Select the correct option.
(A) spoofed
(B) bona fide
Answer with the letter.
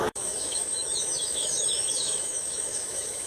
A